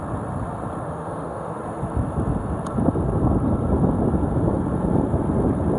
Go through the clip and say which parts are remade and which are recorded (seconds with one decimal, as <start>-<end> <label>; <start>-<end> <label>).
0.0-0.8 recorded; 0.8-1.6 remade; 1.6-5.8 recorded